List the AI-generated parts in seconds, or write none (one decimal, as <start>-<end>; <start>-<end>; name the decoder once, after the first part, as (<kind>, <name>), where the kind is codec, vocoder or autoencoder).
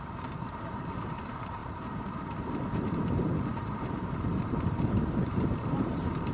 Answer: 0.0-6.3 (vocoder, BigVGAN v2)